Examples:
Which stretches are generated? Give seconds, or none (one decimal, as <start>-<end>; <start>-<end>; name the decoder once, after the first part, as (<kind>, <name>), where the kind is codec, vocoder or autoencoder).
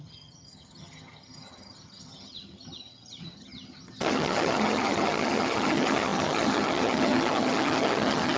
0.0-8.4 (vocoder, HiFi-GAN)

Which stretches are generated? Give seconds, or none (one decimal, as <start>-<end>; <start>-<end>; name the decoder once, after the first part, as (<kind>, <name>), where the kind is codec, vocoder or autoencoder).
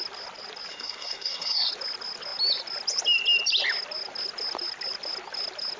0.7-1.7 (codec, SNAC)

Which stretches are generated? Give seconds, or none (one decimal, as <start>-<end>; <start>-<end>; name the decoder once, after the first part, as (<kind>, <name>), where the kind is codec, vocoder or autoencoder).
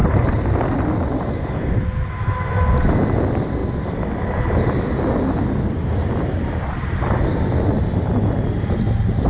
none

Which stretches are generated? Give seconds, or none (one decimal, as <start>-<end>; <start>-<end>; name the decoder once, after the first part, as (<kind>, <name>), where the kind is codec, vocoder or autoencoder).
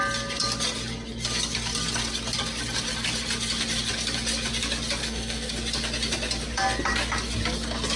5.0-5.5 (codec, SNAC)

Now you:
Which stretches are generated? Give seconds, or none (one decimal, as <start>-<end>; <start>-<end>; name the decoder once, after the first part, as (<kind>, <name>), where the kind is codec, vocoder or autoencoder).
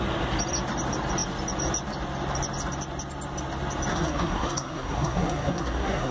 3.9-6.1 (codec, SNAC)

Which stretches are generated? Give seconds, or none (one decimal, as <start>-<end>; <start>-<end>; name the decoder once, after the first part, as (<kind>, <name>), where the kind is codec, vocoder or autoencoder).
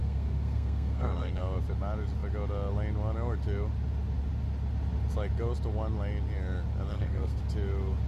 0.0-1.4 (codec, SNAC); 6.9-7.4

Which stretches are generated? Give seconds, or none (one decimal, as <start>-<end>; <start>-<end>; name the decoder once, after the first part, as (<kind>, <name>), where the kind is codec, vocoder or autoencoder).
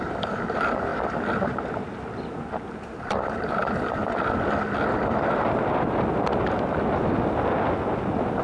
0.0-0.9 (vocoder, BigVGAN v2); 2.8-4.0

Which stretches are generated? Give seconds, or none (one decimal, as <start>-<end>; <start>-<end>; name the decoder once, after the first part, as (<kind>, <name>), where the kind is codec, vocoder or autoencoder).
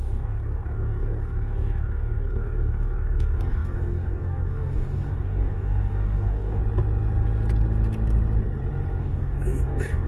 0.0-6.6 (codec, DAC); 9.0-10.1